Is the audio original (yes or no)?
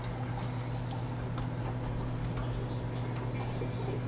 yes